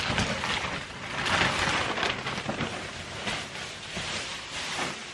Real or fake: real